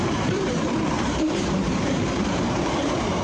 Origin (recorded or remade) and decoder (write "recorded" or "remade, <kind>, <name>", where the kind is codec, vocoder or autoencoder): remade, vocoder, BigVGAN v2